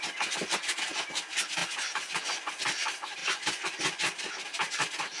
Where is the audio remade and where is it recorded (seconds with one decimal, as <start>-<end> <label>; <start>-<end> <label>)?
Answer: 0.0-1.6 recorded; 1.6-2.5 remade; 2.5-3.2 recorded; 3.2-4.3 remade; 4.3-5.2 recorded